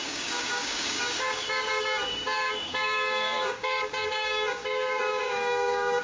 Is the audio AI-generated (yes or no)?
yes